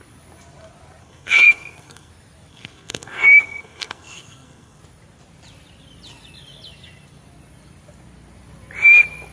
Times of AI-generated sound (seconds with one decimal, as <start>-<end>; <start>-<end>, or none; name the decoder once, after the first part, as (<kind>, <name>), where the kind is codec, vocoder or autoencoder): 1.0-2.1 (codec, SNAC); 2.5-4.8